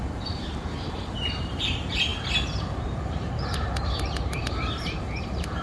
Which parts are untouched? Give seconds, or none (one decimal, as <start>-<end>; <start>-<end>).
none